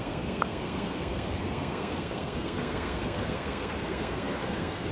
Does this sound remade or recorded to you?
remade